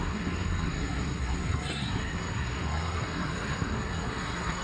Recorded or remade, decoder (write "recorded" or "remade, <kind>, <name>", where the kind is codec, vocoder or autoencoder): remade, codec, SNAC